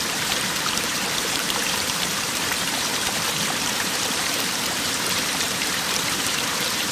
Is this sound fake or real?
fake